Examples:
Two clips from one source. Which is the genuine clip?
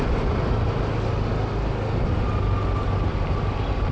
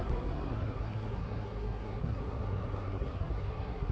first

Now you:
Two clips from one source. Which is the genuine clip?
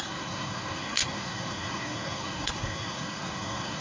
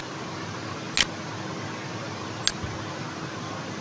second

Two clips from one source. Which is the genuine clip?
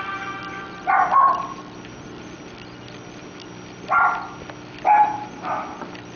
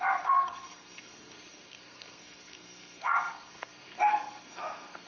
first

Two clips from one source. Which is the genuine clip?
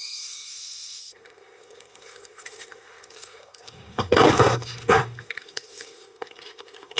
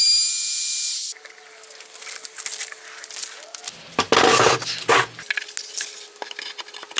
second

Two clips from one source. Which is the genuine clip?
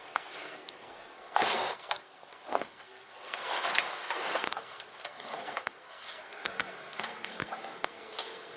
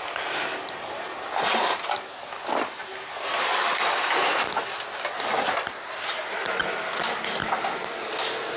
second